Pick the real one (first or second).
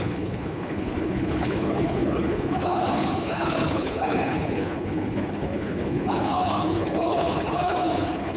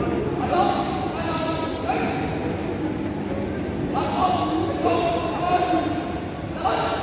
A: second